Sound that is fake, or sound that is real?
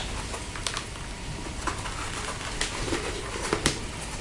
real